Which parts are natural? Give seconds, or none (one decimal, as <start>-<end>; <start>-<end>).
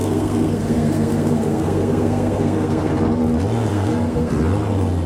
2.9-3.7; 4.3-5.1